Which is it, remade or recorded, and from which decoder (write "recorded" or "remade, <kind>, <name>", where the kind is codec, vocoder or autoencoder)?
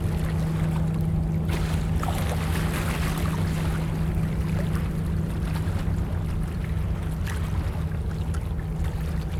recorded